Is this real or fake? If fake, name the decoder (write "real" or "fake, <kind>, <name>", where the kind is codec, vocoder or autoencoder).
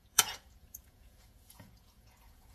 fake, vocoder, Vocos